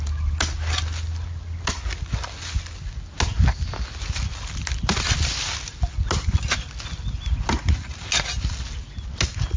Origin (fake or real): real